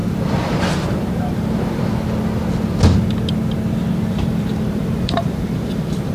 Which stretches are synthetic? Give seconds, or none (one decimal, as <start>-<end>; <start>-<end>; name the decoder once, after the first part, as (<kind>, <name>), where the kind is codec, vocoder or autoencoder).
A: 0.0-1.9 (vocoder, BigVGAN v2); 4.1-6.1